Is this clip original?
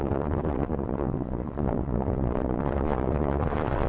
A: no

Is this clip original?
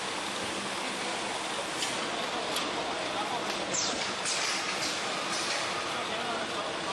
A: yes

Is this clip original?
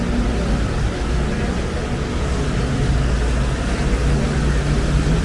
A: yes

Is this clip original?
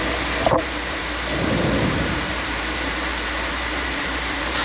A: no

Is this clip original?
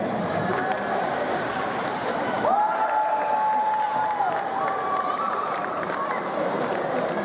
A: no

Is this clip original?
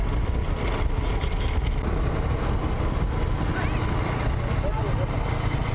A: yes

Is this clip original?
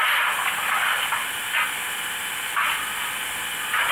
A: yes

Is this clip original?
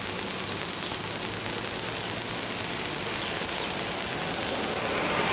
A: yes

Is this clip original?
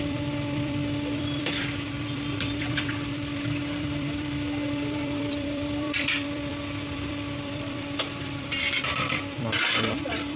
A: no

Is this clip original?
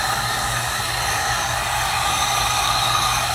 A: no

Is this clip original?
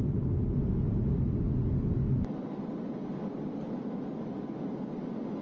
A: yes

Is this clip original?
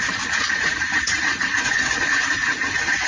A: no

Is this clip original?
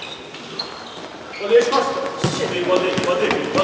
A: yes